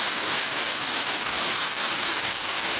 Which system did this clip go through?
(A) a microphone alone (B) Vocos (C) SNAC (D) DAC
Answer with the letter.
D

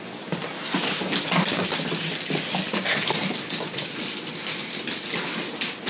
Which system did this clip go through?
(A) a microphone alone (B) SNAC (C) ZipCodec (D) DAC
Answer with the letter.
A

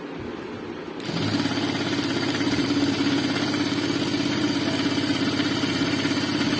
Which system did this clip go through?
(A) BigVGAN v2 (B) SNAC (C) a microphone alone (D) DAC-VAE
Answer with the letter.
C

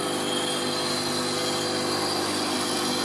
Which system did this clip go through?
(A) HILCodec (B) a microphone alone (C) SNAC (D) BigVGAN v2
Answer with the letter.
B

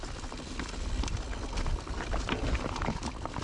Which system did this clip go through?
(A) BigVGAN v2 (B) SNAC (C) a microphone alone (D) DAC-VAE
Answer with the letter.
C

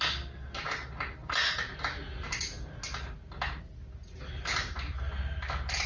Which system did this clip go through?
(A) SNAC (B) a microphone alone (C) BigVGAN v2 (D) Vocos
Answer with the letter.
B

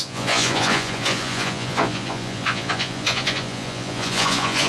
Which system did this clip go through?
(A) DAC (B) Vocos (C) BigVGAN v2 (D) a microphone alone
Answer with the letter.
B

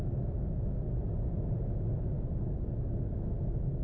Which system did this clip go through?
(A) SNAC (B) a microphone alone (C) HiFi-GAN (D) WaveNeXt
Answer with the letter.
B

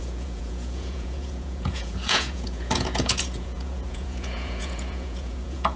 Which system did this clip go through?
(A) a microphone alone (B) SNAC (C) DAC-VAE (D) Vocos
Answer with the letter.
D